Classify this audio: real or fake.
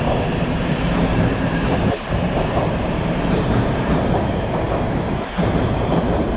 fake